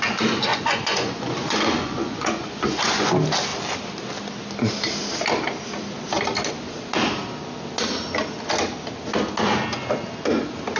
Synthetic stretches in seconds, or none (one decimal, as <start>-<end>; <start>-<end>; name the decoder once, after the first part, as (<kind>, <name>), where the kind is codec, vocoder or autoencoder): 0.5-3.1 (vocoder, Vocos)

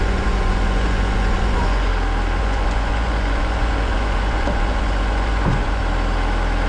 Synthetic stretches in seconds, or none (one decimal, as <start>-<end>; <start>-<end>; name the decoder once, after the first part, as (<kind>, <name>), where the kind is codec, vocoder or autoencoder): 0.0-1.9 (vocoder, Vocos); 2.4-5.8

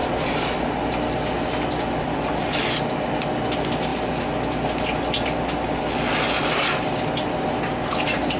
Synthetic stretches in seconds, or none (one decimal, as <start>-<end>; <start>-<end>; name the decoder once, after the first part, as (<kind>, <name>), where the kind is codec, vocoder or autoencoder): none

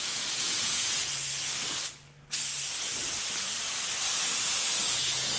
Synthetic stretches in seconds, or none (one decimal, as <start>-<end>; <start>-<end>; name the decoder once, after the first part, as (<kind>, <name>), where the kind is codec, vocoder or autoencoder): 0.0-1.1 (vocoder, Vocos); 4.3-5.4

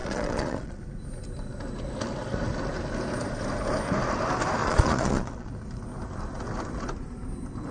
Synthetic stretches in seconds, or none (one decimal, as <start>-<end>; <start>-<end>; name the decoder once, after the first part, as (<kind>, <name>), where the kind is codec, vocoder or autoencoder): 0.0-0.8 (vocoder, Vocos); 4.6-5.5

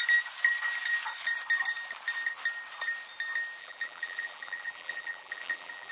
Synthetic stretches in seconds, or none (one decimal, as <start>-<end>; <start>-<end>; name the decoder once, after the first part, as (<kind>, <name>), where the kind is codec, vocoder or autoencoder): 3.6-5.9 (vocoder, BigVGAN v2)

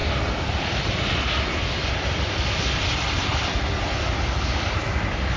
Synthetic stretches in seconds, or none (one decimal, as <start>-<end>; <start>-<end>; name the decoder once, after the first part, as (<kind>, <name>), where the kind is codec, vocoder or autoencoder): none